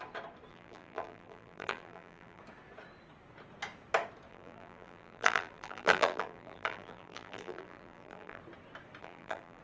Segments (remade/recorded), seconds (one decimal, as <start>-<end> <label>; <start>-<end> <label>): 0.0-0.5 recorded; 0.5-2.4 remade; 2.4-4.3 recorded; 4.3-8.4 remade; 8.4-9.0 recorded; 9.0-9.6 remade